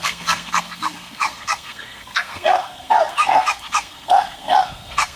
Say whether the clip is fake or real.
fake